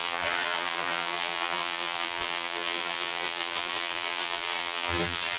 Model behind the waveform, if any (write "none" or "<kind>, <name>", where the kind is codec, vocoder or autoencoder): vocoder, BigVGAN v2